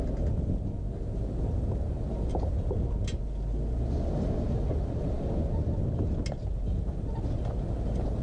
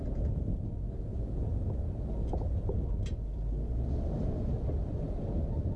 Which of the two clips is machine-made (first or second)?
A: second